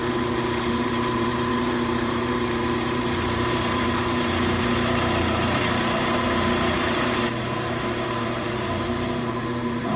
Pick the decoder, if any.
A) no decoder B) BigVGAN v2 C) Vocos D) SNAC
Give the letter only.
B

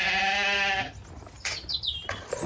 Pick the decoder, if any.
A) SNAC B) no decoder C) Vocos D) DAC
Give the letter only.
B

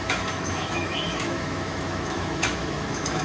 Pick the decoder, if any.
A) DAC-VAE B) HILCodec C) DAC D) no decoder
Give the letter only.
A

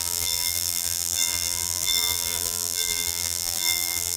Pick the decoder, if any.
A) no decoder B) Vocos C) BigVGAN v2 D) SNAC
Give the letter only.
C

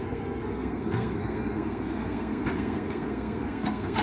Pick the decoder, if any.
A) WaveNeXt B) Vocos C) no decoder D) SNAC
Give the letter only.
D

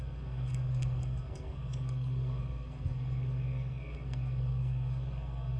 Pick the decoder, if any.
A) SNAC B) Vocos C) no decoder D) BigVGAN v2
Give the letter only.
A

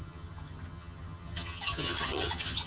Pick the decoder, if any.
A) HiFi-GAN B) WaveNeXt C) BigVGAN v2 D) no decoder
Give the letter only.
A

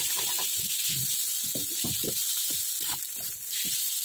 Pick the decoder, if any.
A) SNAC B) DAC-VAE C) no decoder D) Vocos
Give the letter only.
C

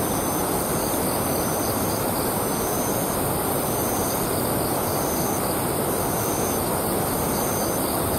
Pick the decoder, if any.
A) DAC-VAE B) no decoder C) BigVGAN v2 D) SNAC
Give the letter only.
B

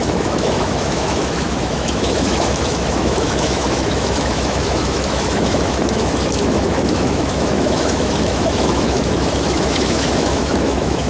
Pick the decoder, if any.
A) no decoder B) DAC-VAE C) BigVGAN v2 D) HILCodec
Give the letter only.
B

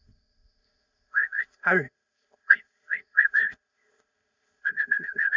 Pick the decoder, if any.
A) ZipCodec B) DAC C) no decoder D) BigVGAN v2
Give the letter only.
A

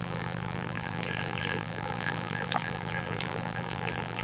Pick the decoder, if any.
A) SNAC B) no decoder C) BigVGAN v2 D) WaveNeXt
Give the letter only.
C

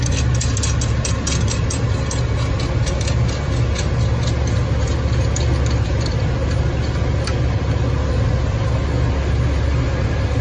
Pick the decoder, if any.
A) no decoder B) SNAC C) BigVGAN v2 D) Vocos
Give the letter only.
A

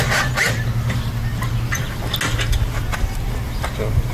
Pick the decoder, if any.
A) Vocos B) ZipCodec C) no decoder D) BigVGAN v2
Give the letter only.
C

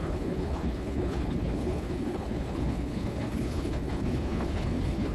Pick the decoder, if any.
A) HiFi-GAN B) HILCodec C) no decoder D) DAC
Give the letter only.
B